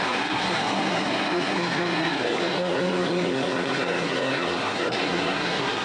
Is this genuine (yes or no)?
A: no